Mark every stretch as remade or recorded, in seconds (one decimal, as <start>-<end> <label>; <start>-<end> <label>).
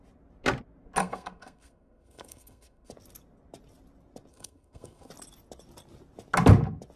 0.0-1.0 recorded; 1.0-2.9 remade; 2.9-4.3 recorded; 4.3-5.1 remade; 5.1-7.0 recorded